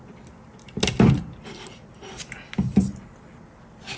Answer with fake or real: real